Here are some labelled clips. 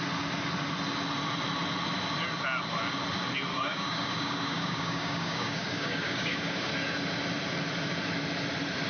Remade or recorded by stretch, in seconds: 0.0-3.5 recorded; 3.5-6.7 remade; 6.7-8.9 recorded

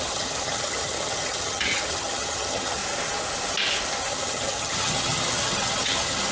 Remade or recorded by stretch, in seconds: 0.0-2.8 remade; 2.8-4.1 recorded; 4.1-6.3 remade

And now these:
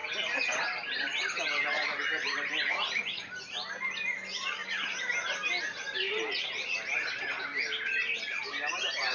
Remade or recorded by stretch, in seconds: 0.0-4.6 recorded; 4.6-6.5 remade; 6.5-9.1 recorded

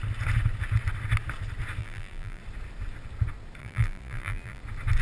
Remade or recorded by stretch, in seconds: 0.0-1.8 recorded; 1.8-2.4 remade; 2.4-3.6 recorded; 3.6-4.6 remade; 4.6-5.0 recorded